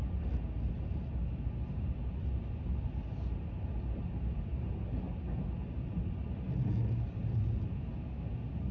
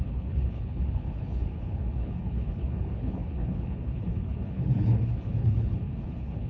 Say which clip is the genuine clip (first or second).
first